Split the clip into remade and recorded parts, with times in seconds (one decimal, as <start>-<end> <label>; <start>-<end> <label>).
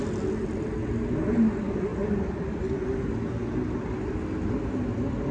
0.0-5.3 recorded